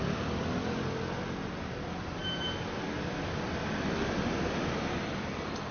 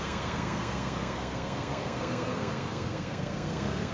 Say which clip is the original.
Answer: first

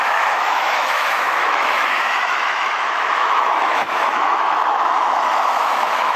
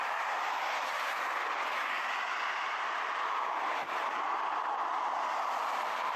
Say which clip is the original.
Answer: second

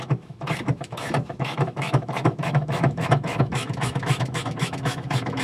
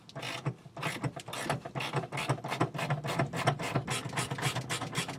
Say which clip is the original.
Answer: second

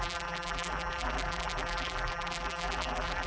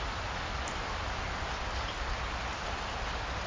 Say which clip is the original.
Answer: second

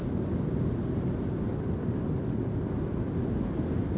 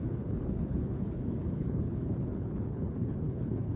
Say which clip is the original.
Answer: first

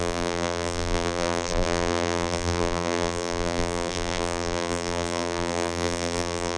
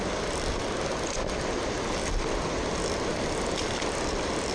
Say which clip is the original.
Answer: second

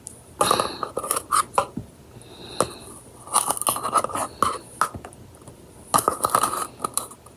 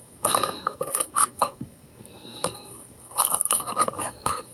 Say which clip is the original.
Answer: first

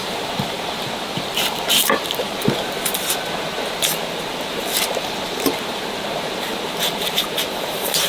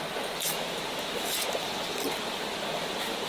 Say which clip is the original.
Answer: second